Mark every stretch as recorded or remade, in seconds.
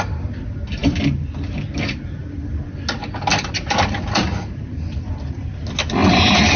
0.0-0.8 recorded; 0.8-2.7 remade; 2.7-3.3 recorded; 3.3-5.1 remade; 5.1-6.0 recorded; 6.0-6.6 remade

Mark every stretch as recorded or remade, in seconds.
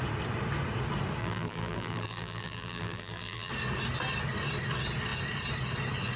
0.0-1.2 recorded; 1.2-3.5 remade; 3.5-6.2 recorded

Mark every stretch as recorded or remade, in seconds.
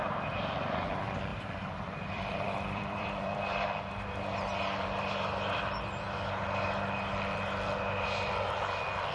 0.0-1.3 recorded; 1.3-3.8 remade; 3.8-9.1 recorded